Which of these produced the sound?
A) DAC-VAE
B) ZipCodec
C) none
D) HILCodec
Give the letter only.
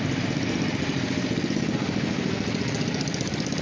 C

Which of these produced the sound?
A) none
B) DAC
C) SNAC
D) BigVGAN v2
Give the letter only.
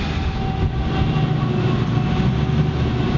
A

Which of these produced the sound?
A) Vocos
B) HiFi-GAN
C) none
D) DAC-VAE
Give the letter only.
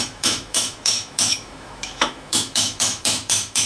D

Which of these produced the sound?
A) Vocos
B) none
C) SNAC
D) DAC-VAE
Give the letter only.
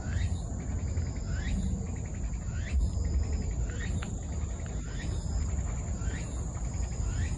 B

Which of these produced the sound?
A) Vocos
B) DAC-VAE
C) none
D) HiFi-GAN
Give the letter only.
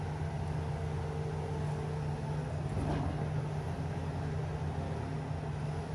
C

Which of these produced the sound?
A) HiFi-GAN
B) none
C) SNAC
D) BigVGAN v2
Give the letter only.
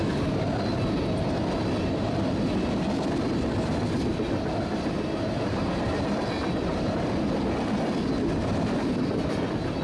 B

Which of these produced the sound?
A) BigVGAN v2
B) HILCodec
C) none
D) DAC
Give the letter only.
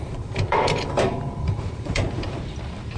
A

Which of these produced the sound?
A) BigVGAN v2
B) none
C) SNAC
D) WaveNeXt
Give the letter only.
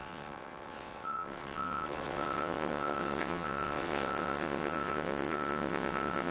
D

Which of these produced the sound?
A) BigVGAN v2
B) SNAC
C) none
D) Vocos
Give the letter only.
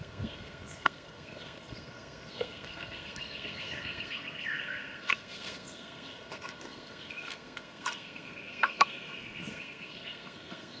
B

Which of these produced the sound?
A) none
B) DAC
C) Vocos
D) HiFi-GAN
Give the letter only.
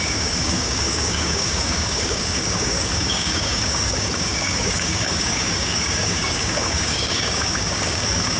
B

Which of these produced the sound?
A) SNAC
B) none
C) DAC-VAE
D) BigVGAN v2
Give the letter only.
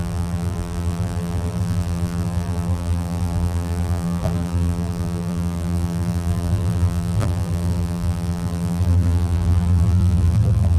D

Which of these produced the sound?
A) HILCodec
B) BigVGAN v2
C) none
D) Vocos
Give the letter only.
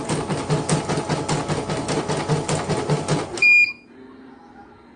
C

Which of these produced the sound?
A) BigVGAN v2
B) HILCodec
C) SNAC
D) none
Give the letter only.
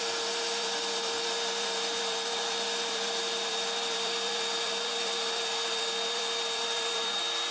A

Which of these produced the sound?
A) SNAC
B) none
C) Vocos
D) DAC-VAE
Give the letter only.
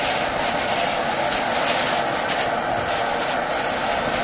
B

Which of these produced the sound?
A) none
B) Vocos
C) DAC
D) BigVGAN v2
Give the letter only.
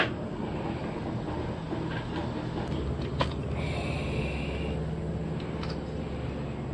A